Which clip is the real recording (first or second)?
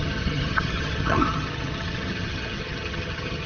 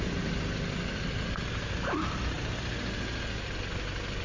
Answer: second